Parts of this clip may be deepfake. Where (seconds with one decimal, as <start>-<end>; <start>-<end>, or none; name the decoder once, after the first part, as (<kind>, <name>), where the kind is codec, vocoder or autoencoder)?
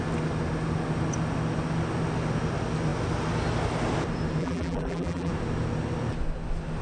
4.4-5.3 (vocoder, BigVGAN v2)